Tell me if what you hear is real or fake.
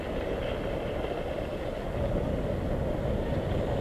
real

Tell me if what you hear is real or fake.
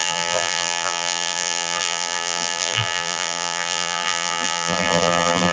fake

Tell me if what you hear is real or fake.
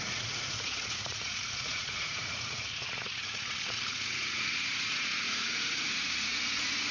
fake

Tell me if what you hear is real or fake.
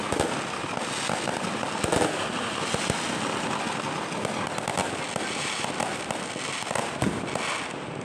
real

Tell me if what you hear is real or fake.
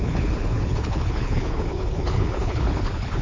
fake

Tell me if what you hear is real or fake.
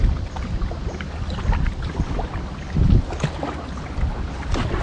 real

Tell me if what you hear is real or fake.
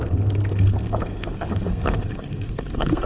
fake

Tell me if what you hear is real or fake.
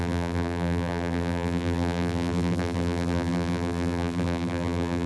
fake